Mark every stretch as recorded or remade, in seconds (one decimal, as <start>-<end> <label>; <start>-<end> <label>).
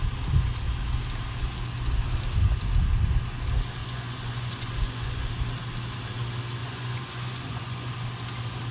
0.0-3.8 recorded; 3.8-5.3 remade; 5.3-6.6 recorded; 6.6-7.9 remade; 7.9-8.7 recorded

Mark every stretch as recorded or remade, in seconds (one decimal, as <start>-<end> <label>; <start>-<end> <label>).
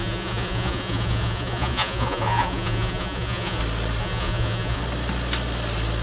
0.0-3.6 remade; 3.6-4.0 recorded; 4.0-4.8 remade; 4.8-6.0 recorded